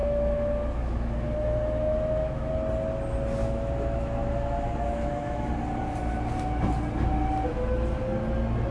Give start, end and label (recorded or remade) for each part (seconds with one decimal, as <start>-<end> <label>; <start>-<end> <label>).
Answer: 0.0-2.5 remade; 2.5-3.4 recorded; 3.4-5.5 remade; 5.5-8.7 recorded